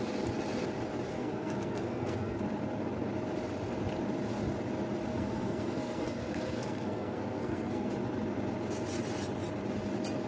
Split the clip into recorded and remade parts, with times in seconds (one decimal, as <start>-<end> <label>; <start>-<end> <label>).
0.0-1.1 recorded; 1.1-2.4 remade; 2.4-5.1 recorded; 5.1-7.9 remade; 7.9-10.3 recorded